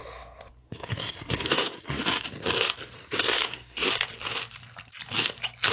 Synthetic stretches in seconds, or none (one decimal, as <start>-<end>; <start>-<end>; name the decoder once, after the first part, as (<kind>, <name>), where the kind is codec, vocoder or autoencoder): 0.6-2.0 (codec, SNAC); 3.0-3.9